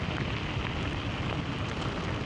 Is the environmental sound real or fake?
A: real